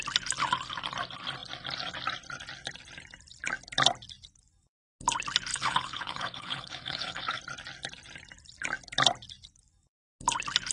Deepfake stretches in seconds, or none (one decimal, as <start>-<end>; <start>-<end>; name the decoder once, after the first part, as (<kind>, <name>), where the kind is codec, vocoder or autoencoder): 5.5-7.4 (codec, HILCodec)